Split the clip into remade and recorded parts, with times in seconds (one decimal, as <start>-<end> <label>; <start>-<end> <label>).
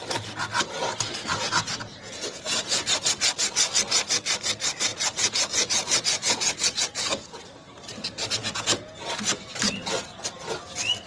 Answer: 0.0-1.3 recorded; 1.3-3.0 remade; 3.0-4.9 recorded; 4.9-7.4 remade; 7.4-8.3 recorded; 8.3-8.9 remade; 8.9-11.1 recorded